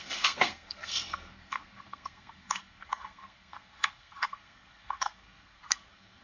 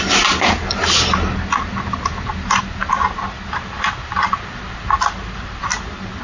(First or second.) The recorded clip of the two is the second